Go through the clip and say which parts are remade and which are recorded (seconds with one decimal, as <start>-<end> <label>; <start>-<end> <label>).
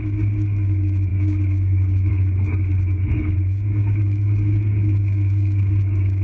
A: 0.0-6.2 remade